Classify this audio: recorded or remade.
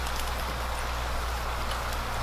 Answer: recorded